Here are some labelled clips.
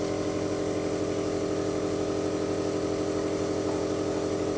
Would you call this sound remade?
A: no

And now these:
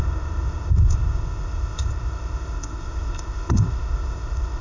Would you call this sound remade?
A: yes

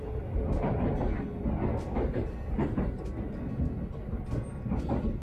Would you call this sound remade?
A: no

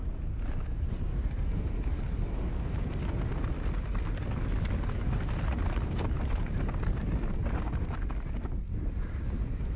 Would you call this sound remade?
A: no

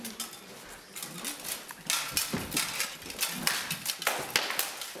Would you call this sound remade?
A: no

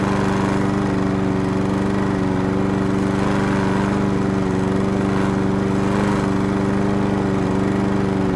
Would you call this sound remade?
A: no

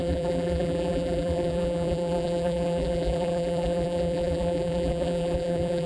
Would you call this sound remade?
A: yes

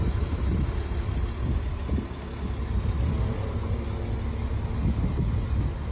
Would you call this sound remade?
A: no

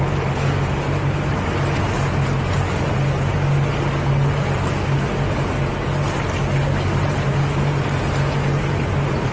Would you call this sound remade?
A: no